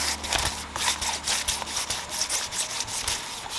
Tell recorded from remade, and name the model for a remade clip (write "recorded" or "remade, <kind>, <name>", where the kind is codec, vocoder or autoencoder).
recorded